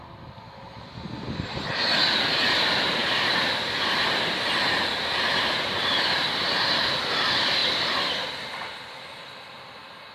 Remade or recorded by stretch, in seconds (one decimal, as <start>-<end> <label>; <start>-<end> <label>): 0.0-10.1 recorded